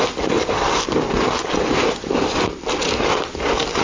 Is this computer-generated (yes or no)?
no